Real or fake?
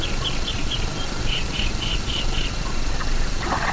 fake